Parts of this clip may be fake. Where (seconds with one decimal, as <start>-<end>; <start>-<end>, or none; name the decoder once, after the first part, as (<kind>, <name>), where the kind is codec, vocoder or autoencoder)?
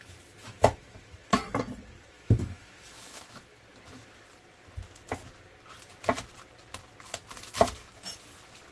0.0-1.4 (autoencoder, DAC-VAE); 2.1-3.5